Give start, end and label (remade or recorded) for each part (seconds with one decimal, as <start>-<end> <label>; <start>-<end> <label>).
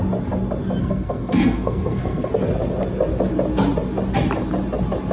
0.0-0.8 recorded; 0.8-2.3 remade; 2.3-5.1 recorded